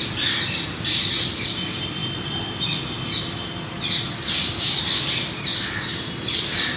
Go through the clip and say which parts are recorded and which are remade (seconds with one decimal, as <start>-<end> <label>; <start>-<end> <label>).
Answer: 0.0-6.8 recorded